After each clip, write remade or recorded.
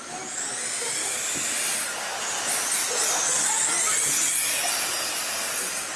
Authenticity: recorded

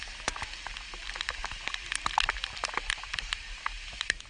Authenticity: recorded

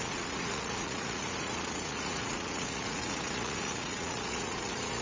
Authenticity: remade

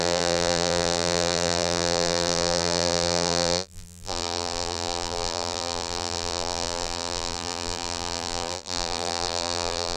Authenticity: remade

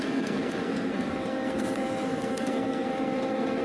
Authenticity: remade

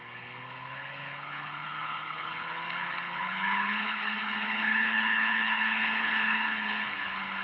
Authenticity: remade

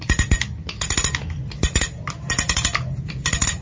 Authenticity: recorded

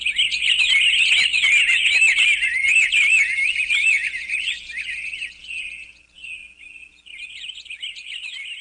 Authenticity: recorded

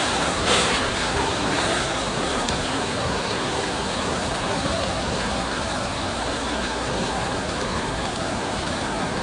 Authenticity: remade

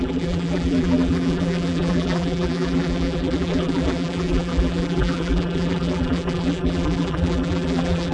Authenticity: remade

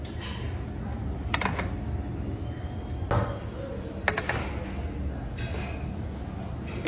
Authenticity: recorded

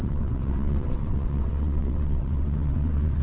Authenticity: remade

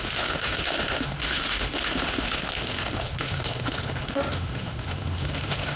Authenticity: remade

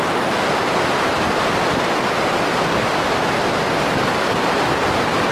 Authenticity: recorded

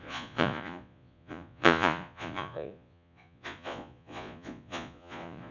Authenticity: remade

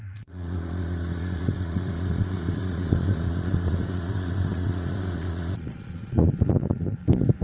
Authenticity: remade